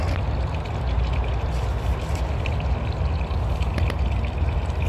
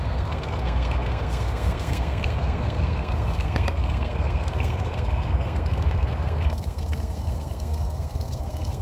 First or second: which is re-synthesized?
second